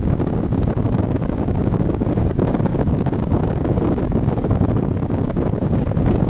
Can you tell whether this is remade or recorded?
remade